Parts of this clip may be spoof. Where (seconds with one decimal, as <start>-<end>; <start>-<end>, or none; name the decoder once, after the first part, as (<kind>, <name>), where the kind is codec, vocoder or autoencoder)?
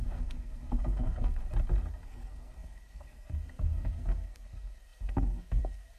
0.0-1.4 (codec, SNAC); 1.9-6.0